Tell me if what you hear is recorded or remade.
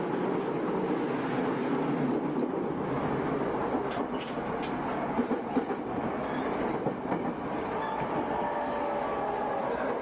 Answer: recorded